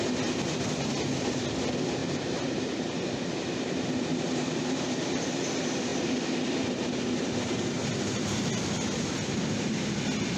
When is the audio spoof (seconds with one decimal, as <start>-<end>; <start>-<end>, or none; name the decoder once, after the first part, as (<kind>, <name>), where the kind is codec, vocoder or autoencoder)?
none